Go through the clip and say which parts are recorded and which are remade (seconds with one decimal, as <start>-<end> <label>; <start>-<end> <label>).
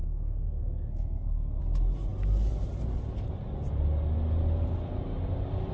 0.0-1.6 remade; 1.6-5.7 recorded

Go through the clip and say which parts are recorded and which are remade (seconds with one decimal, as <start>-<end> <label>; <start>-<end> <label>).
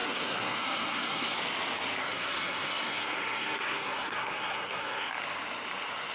0.0-1.4 remade; 1.4-2.0 recorded; 2.0-5.1 remade; 5.1-6.1 recorded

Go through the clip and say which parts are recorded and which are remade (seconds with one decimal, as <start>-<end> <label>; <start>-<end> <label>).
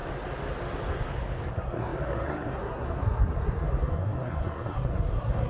0.0-1.5 recorded; 1.5-5.5 remade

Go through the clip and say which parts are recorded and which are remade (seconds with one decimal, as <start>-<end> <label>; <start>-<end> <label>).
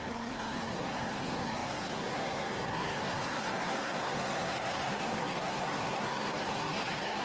0.0-7.2 remade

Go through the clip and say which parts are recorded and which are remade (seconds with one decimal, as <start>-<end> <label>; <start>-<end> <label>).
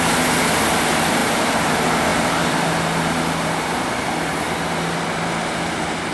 0.0-6.1 recorded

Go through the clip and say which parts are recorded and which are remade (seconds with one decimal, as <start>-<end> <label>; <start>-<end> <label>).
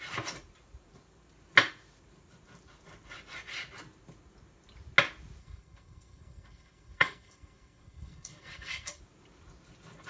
0.0-5.4 recorded; 5.4-9.0 remade; 9.0-10.1 recorded